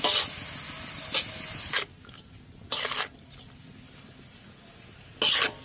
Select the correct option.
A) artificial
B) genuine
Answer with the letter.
B